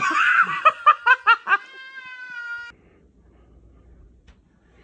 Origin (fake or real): real